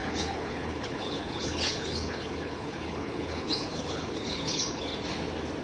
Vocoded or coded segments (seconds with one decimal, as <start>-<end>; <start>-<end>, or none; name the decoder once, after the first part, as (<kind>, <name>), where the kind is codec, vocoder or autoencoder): 0.0-4.9 (codec, HILCodec)